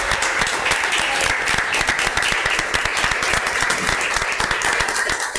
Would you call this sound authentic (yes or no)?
yes